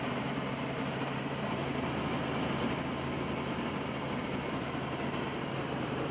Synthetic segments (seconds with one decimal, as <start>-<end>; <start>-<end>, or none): 0.0-1.6; 3.5-6.1